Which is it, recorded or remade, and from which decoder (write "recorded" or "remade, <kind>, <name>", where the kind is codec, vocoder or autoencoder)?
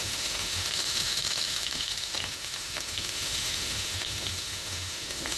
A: remade, autoencoder, DAC-VAE